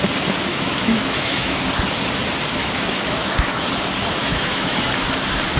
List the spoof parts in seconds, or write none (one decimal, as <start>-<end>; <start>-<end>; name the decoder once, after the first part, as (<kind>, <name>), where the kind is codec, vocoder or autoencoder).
0.5-1.6 (autoencoder, DAC-VAE); 2.6-3.3; 4.2-4.9